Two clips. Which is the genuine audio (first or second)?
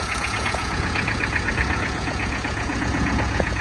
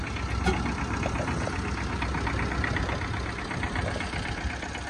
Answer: second